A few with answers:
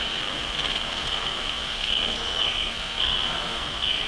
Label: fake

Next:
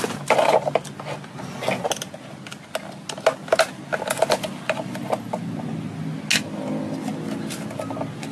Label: real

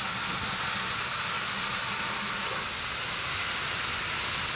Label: real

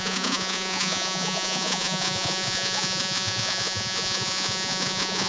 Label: fake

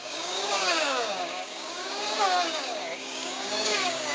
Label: fake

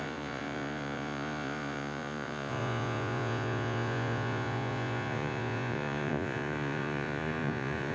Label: fake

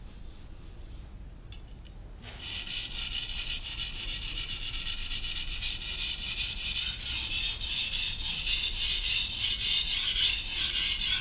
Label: real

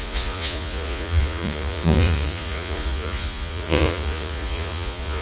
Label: fake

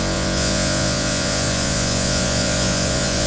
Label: fake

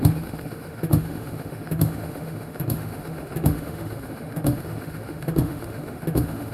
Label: fake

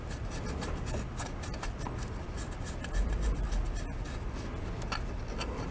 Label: real